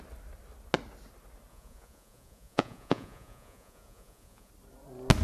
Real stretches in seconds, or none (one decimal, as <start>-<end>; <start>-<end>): 0.0-1.5; 4.5-5.2